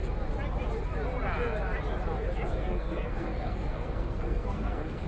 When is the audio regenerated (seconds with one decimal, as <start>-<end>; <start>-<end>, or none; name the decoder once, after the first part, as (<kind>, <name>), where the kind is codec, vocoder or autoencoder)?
2.5-5.1 (codec, SNAC)